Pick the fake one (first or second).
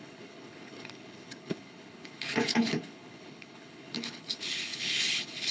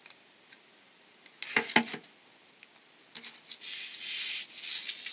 first